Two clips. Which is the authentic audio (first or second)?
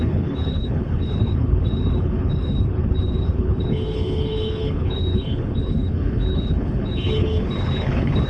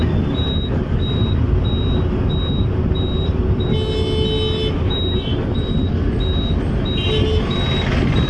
second